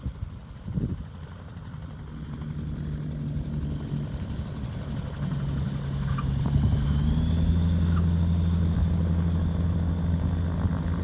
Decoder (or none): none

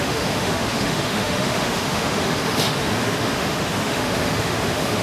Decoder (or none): autoencoder, DAC-VAE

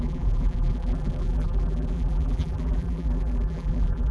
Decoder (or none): vocoder, BigVGAN v2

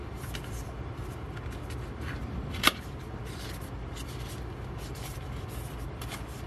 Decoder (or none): vocoder, BigVGAN v2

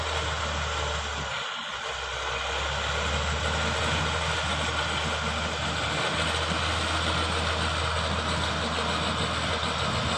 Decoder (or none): none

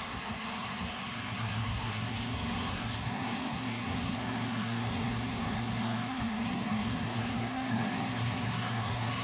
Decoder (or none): codec, SNAC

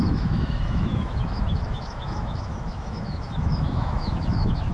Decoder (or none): autoencoder, DAC-VAE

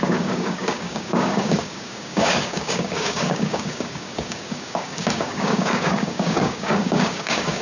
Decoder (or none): codec, DAC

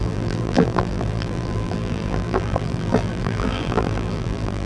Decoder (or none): vocoder, BigVGAN v2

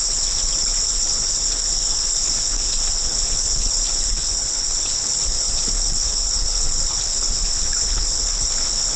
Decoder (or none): codec, HILCodec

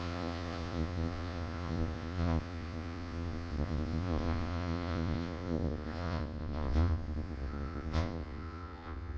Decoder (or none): vocoder, Vocos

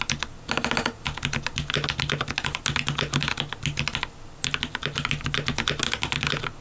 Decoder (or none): none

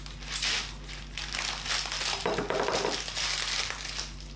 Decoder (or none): none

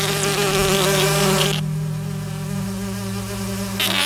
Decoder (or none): none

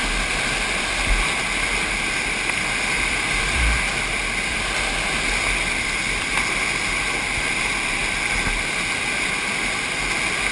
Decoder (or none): none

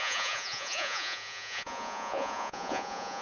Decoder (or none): vocoder, Vocos